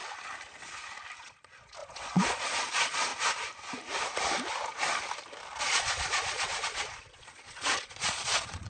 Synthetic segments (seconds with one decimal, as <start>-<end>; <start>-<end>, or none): 1.2-3.1; 5.6-8.7